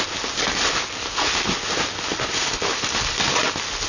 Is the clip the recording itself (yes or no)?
yes